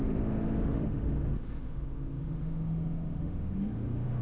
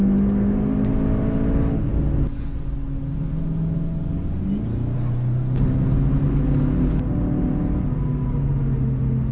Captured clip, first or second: second